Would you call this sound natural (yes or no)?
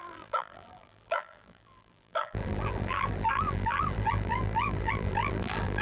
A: no